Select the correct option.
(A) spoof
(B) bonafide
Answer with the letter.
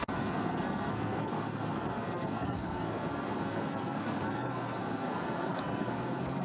A